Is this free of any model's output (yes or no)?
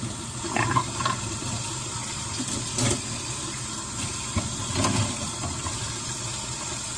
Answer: yes